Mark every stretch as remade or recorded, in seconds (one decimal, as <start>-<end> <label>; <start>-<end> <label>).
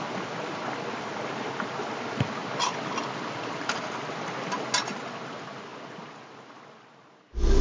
0.0-7.6 recorded